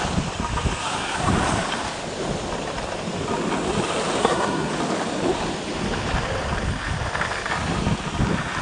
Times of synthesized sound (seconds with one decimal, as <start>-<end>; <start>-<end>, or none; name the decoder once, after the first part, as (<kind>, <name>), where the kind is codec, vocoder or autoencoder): 0.8-1.3 (codec, SNAC); 4.2-4.7